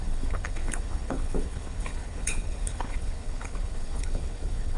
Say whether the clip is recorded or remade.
remade